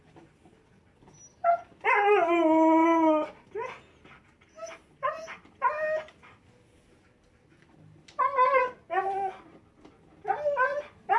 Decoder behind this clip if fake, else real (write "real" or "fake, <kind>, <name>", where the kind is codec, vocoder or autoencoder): real